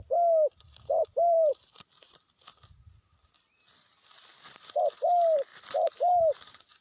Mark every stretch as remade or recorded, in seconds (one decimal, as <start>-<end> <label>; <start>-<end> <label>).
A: 0.0-1.1 recorded; 1.1-2.1 remade; 2.1-6.8 recorded